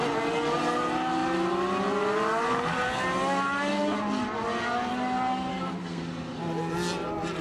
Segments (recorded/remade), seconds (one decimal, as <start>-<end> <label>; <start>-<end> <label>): 0.0-5.5 recorded; 5.5-6.0 remade; 6.0-7.4 recorded